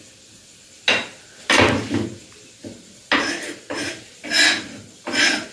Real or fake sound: real